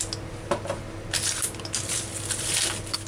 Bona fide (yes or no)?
yes